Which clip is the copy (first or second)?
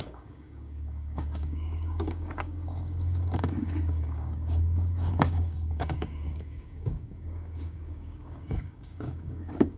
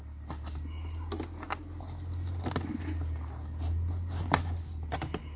first